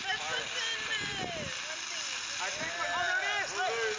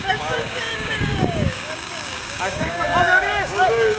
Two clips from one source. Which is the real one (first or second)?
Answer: first